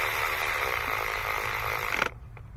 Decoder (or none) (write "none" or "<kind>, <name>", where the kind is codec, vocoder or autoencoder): vocoder, BigVGAN v2